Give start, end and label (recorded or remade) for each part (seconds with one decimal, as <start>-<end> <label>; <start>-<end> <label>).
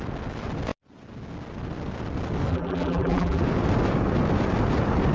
0.0-2.5 recorded; 2.5-3.4 remade; 3.4-5.1 recorded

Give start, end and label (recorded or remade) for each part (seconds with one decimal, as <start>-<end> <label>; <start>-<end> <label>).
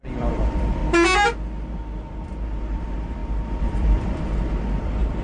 0.0-0.8 remade; 0.8-2.1 recorded; 2.1-5.2 remade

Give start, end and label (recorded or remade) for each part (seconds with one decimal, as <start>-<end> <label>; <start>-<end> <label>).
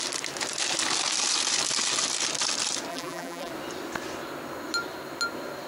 0.0-2.9 recorded; 2.9-3.5 remade; 3.5-5.7 recorded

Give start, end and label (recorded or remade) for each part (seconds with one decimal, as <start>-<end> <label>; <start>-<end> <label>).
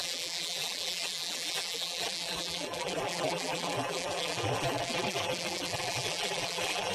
0.0-6.9 remade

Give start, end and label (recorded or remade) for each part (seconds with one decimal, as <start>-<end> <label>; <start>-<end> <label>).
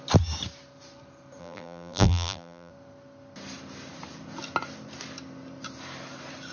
0.0-1.4 recorded; 1.4-2.7 remade; 2.7-6.5 recorded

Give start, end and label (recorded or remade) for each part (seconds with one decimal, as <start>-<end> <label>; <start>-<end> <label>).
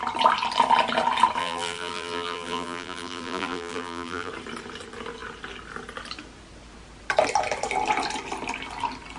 0.0-1.4 recorded; 1.4-4.3 remade; 4.3-9.2 recorded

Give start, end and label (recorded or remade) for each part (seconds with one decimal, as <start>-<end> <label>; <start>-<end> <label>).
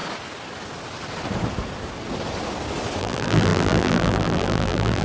0.0-3.0 recorded; 3.0-5.0 remade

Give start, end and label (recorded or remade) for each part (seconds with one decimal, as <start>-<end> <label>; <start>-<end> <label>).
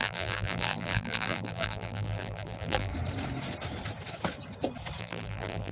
0.0-2.9 remade; 2.9-5.0 recorded; 5.0-5.7 remade